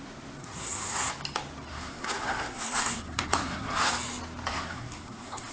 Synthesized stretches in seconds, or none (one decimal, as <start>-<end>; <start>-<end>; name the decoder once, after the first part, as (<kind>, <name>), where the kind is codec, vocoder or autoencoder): 0.4-1.1 (codec, SNAC); 1.7-3.9; 4.5-5.5